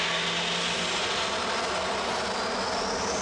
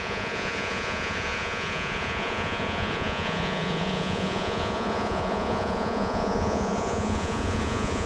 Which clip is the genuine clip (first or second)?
first